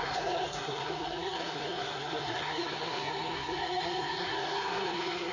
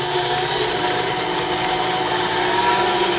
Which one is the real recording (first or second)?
second